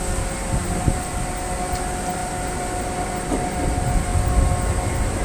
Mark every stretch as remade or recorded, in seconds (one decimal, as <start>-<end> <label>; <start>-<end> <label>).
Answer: 0.0-5.2 recorded